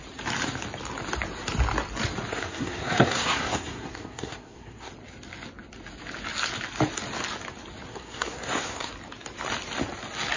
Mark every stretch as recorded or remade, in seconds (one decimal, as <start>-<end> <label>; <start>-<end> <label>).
0.0-2.3 recorded; 2.3-4.9 remade; 4.9-7.9 recorded; 7.9-8.9 remade; 8.9-10.4 recorded